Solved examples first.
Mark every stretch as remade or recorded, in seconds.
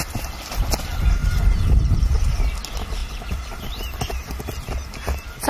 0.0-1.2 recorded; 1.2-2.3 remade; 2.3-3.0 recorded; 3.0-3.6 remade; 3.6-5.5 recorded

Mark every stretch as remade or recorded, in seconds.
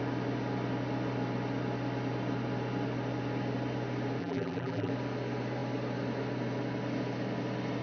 0.0-4.2 recorded; 4.2-4.9 remade; 4.9-7.8 recorded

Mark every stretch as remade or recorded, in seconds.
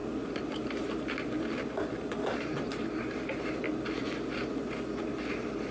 0.0-3.4 remade; 3.4-5.7 recorded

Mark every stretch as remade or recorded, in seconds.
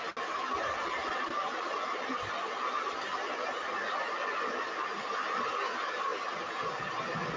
0.0-7.4 recorded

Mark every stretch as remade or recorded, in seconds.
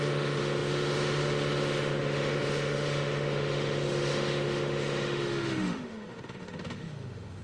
0.0-7.4 remade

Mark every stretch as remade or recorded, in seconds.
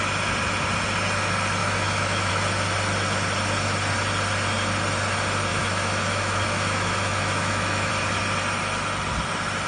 0.0-1.6 recorded; 1.6-2.3 remade; 2.3-5.5 recorded; 5.5-7.9 remade; 7.9-9.7 recorded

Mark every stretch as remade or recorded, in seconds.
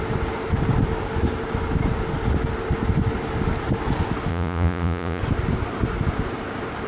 0.0-4.3 recorded; 4.3-5.2 remade; 5.2-6.9 recorded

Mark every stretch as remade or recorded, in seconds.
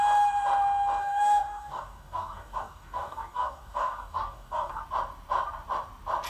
0.0-1.0 recorded; 1.0-4.8 remade; 4.8-6.3 recorded